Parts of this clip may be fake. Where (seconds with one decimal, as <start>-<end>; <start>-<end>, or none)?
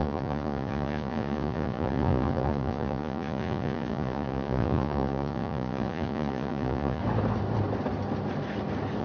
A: 0.0-7.0